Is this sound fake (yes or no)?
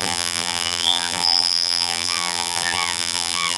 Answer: yes